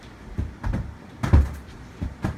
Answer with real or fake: fake